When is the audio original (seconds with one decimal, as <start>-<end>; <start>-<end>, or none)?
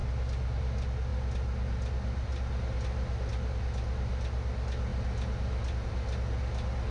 0.0-6.9